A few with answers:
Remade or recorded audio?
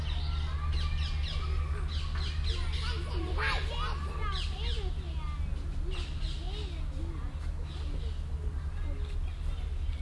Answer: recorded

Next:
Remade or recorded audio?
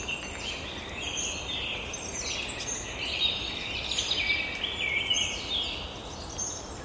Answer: recorded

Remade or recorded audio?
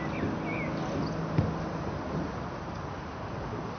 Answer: recorded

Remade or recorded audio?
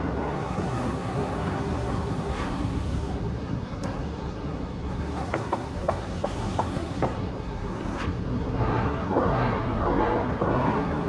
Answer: remade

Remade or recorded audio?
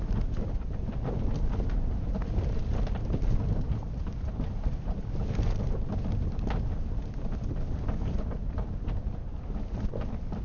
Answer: recorded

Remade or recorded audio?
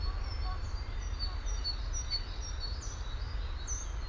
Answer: recorded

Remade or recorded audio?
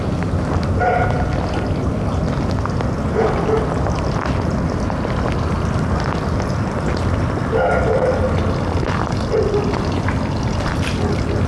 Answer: recorded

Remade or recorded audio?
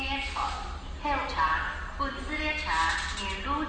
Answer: recorded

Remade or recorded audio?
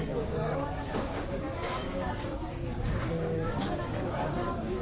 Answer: remade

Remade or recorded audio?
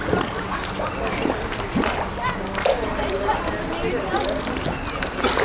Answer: recorded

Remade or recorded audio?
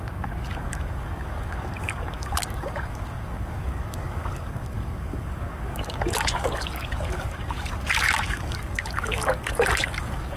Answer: remade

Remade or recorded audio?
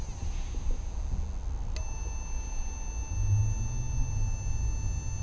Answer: recorded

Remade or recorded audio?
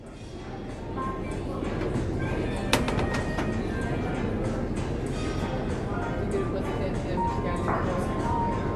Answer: recorded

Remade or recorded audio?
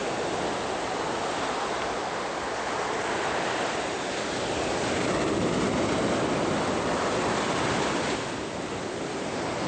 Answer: recorded